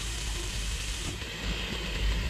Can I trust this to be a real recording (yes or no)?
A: no